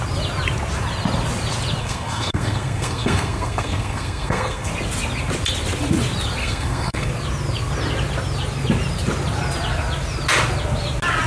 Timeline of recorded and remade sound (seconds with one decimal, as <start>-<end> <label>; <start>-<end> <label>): 0.0-1.8 recorded; 1.8-4.7 remade; 4.7-6.4 recorded; 6.4-7.1 remade; 7.1-11.3 recorded